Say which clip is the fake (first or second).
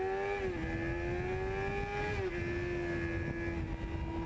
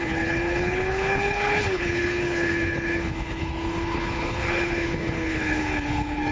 second